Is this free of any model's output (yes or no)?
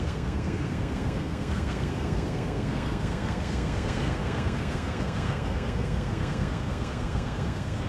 no